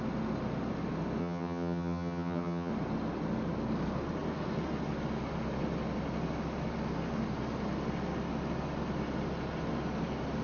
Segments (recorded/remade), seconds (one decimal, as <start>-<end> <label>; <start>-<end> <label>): 0.0-1.2 recorded; 1.2-2.7 remade; 2.7-10.4 recorded